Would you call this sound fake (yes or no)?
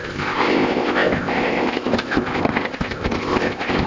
yes